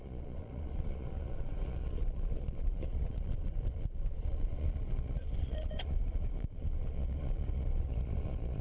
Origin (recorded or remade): remade